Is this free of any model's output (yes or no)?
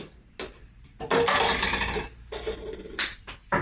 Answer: yes